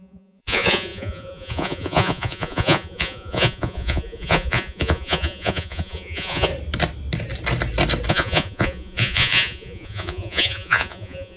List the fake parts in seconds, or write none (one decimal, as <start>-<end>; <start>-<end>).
0.0-6.5; 8.1-11.4